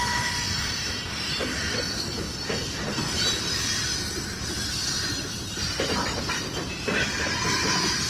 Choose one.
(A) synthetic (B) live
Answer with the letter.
A